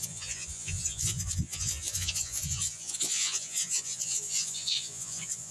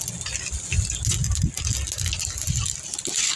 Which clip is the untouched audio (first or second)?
second